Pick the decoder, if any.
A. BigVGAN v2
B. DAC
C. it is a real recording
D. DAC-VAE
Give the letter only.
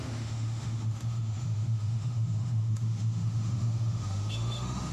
D